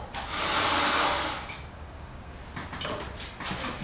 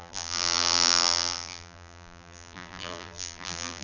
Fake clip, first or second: second